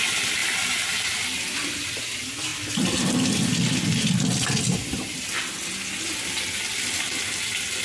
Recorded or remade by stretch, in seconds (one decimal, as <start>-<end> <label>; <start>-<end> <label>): 0.0-7.8 recorded